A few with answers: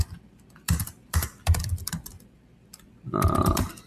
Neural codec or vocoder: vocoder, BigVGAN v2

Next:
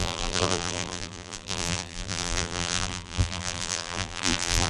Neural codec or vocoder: vocoder, BigVGAN v2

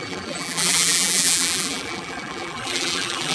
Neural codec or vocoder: vocoder, BigVGAN v2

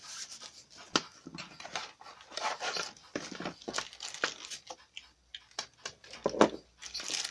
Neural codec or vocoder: none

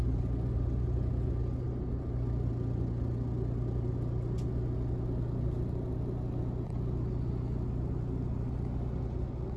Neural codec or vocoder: none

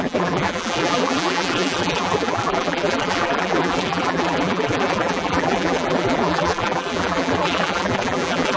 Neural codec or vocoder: vocoder, BigVGAN v2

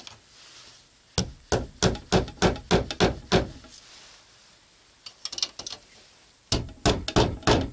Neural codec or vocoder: none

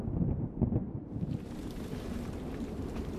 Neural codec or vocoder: vocoder, BigVGAN v2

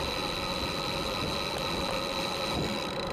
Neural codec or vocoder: vocoder, BigVGAN v2